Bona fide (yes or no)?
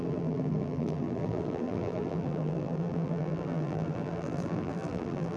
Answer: no